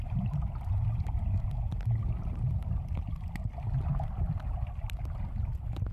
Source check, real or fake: real